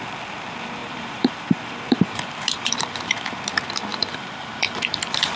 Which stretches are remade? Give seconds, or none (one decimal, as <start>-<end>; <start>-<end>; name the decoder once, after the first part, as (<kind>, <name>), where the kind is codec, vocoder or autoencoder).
0.8-3.4 (vocoder, BigVGAN v2); 3.9-5.0